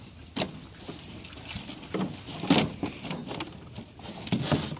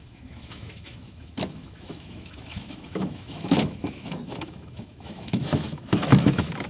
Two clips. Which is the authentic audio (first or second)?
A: first